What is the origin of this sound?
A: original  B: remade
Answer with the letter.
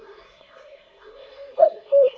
B